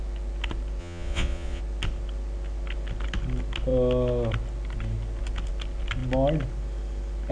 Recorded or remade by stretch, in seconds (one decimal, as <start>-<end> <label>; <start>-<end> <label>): 0.0-0.8 recorded; 0.8-1.6 remade; 1.6-7.3 recorded